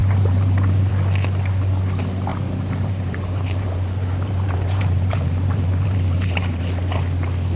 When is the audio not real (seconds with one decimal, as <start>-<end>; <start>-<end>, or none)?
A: 0.0-0.9; 2.3-6.6